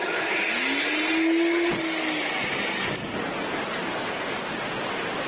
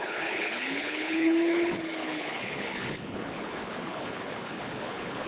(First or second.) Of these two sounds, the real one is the first